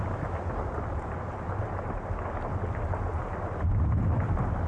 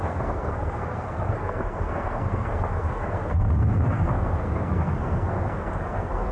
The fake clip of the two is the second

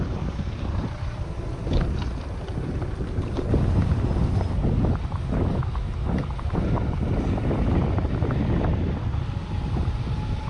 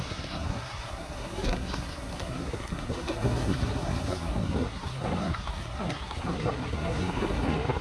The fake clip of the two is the second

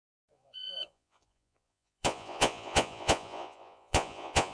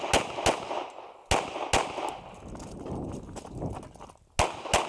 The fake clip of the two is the first